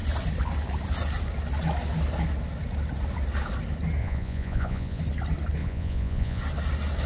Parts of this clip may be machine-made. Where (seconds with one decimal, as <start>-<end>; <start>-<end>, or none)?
4.0-5.0; 5.6-6.4